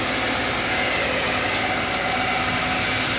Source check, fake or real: real